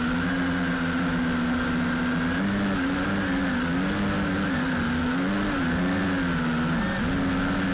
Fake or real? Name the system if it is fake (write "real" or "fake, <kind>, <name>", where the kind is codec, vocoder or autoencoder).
real